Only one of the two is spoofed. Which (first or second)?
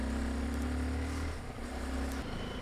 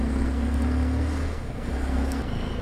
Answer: second